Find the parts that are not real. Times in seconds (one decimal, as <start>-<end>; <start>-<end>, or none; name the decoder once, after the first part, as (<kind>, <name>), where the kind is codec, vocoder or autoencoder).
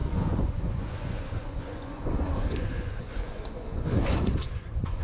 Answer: 0.0-5.0 (vocoder, Vocos)